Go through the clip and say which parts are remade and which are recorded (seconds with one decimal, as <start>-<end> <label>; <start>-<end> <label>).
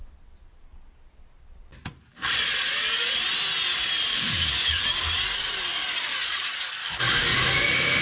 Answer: 0.0-4.1 recorded; 4.1-4.8 remade; 4.8-6.8 recorded; 6.8-8.0 remade